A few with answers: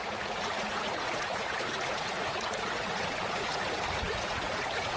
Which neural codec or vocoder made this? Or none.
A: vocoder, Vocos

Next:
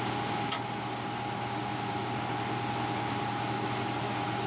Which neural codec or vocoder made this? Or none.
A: none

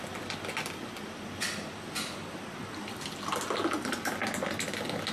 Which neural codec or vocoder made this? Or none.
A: none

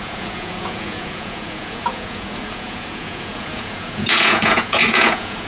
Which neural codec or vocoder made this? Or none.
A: vocoder, Vocos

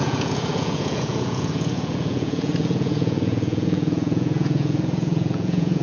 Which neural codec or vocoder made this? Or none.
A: vocoder, Vocos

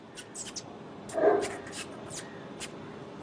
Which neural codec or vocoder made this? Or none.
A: none